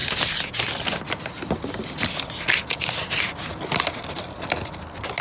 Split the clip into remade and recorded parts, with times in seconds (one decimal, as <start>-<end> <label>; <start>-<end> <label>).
0.0-5.2 recorded